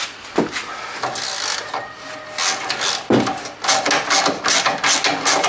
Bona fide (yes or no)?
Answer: yes